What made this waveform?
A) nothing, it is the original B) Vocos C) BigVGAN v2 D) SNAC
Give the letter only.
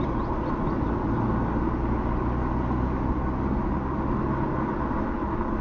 A